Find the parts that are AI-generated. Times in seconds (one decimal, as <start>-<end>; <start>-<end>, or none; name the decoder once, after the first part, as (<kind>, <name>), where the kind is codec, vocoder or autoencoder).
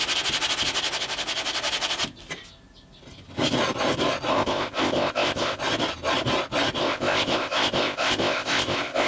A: 4.3-5.6 (codec, ZipCodec); 6.8-9.1